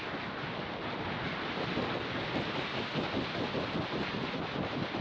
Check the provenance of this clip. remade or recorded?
recorded